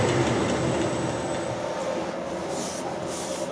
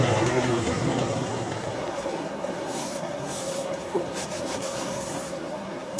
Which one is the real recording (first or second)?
first